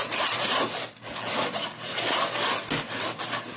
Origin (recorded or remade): recorded